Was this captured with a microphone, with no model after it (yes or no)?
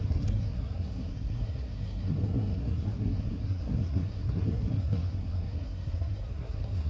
no